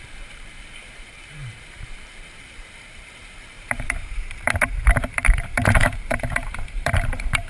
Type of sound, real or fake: fake